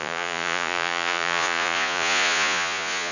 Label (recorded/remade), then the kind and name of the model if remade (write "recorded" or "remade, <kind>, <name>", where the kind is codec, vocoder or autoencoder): remade, vocoder, Vocos